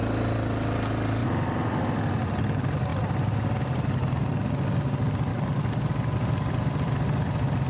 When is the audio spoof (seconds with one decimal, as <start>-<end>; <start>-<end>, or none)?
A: 5.3-5.9

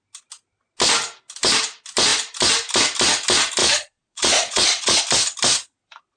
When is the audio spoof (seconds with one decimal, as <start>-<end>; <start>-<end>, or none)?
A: 3.6-5.0

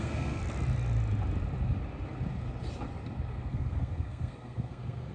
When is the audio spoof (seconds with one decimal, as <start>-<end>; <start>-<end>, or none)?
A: 0.0-0.4; 3.5-5.1

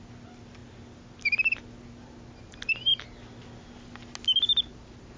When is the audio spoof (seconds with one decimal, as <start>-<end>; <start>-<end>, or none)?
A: none

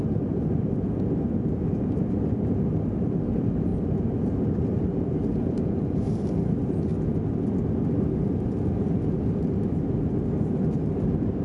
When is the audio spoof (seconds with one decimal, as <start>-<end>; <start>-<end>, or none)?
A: none

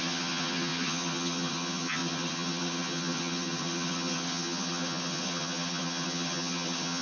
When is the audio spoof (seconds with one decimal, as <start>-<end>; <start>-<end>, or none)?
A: 0.0-7.0

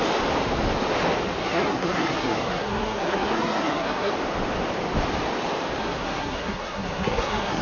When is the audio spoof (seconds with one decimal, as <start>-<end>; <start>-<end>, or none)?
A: 1.4-4.1; 5.8-7.6

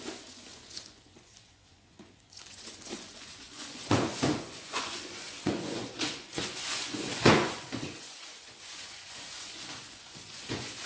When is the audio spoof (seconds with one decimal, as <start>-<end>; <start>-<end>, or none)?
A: 0.0-10.9